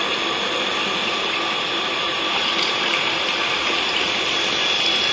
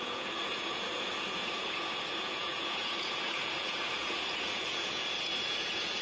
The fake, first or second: second